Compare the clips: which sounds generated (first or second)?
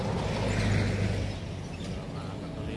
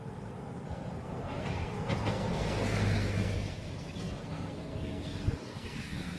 second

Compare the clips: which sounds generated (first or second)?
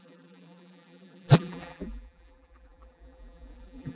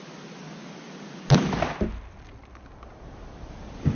first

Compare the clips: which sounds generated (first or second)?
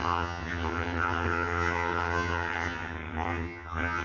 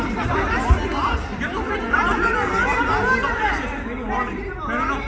first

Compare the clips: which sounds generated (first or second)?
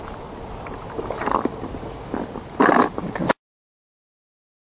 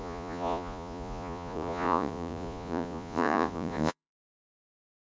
second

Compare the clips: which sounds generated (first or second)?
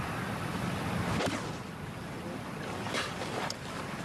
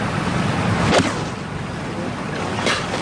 first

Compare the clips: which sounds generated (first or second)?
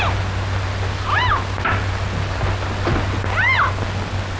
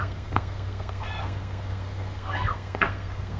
second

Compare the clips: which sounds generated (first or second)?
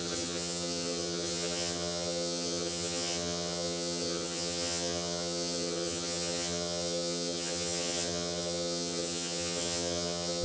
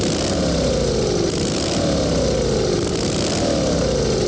first